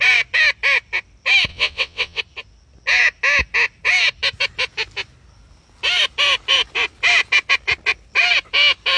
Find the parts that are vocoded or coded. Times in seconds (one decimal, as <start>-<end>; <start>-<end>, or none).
1.5-2.2

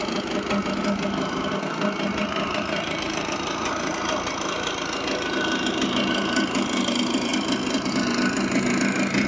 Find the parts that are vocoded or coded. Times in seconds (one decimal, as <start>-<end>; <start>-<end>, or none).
none

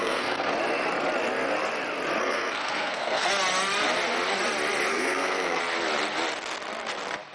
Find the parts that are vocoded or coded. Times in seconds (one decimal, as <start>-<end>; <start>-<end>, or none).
0.0-0.5; 2.2-3.3; 4.9-5.6

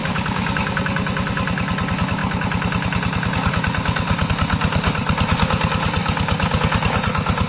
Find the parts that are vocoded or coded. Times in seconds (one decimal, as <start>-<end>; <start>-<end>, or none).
0.0-0.8

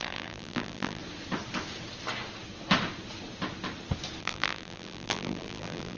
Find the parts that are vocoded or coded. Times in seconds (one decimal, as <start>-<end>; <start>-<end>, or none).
0.0-1.0; 4.2-6.0

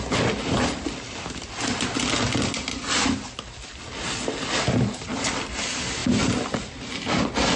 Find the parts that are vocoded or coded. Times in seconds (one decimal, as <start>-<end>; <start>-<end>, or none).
none